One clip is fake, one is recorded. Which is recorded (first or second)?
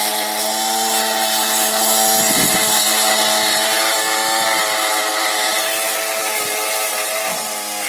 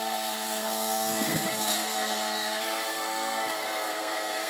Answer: first